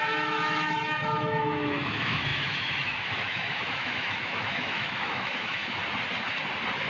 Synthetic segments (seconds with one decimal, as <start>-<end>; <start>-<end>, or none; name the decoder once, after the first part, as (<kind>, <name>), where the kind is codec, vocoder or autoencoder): 0.0-5.8 (autoencoder, DAC-VAE)